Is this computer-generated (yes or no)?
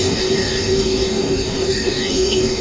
yes